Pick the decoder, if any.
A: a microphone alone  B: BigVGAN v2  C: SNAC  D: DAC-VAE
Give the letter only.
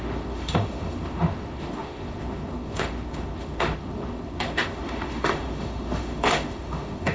D